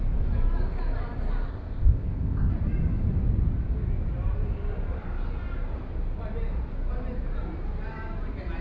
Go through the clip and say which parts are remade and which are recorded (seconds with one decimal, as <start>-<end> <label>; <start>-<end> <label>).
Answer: 0.0-1.5 recorded; 1.5-2.5 remade; 2.5-8.6 recorded